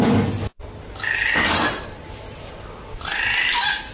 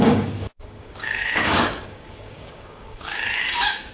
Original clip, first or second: first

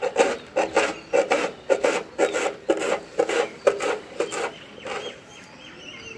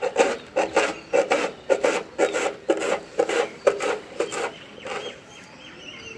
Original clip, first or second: first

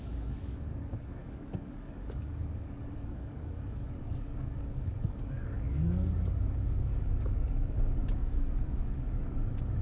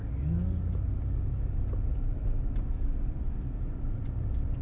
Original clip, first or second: second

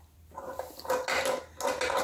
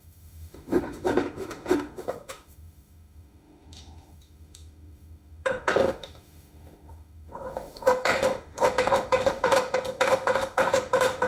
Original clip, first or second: first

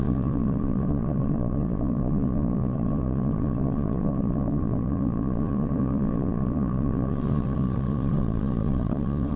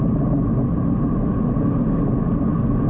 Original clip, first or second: second